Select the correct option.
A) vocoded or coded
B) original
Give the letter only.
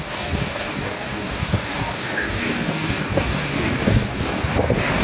A